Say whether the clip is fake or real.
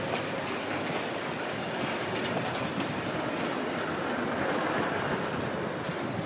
fake